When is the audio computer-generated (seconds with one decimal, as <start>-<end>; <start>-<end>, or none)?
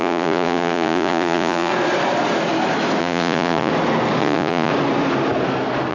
0.0-1.7; 3.0-3.7; 4.2-4.7